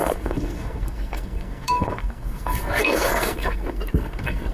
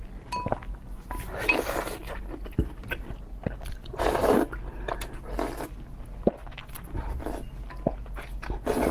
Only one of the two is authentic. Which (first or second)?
second